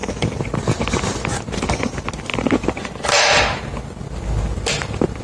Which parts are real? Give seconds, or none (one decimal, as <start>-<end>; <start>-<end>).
0.0-5.2